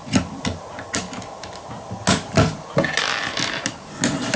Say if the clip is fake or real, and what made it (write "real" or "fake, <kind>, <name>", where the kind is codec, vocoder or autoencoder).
real